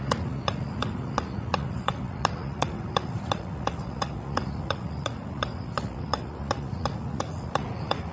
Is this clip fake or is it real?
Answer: fake